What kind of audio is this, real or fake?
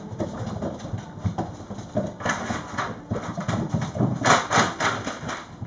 real